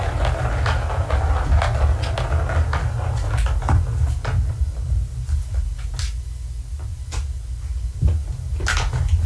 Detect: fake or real real